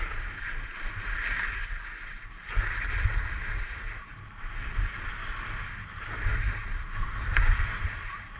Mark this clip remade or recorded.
recorded